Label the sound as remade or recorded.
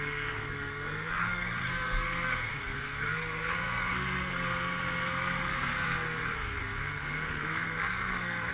remade